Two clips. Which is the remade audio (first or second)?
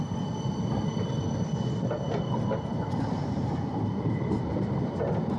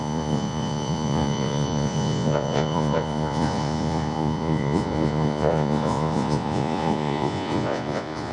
second